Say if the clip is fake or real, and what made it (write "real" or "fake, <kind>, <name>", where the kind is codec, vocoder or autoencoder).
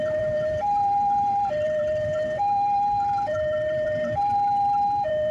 fake, vocoder, BigVGAN v2